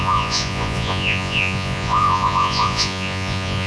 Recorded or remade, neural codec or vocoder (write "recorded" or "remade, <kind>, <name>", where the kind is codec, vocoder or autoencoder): remade, vocoder, Vocos